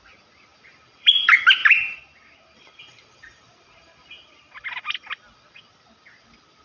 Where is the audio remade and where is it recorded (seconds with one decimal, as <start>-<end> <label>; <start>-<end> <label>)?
0.0-0.5 recorded; 0.5-1.1 remade; 1.1-1.6 recorded; 1.6-5.6 remade; 5.6-6.6 recorded